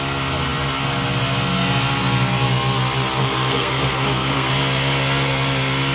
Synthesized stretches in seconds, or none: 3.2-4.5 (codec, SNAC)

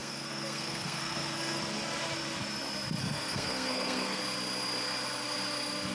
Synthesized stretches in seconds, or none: 0.0-1.6 (codec, SNAC); 3.0-4.2